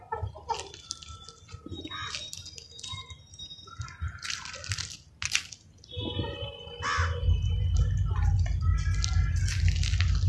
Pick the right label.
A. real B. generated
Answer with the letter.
A